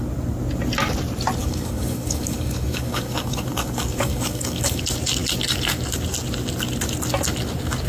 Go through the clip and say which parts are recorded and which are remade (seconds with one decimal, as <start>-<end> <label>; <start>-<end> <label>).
0.0-1.4 recorded; 1.4-4.8 remade; 4.8-7.9 recorded

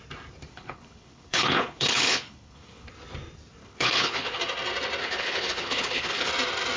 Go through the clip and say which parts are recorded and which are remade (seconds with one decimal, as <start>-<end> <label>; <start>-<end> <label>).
0.0-0.5 recorded; 0.5-2.9 remade; 2.9-3.6 recorded; 3.6-4.4 remade; 4.4-5.0 recorded; 5.0-6.3 remade; 6.3-6.8 recorded

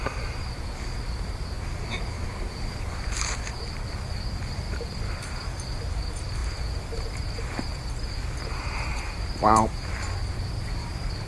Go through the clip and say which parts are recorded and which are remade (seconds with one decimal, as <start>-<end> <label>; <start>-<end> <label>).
0.0-8.9 remade; 8.9-9.4 recorded; 9.4-11.3 remade